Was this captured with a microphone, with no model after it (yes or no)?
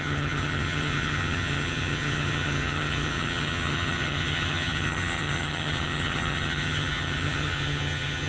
no